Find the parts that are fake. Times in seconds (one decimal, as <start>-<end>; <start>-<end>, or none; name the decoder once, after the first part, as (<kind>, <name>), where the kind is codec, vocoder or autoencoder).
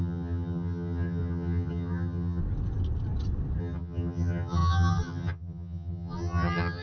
0.0-2.4 (vocoder, HiFi-GAN); 3.6-6.8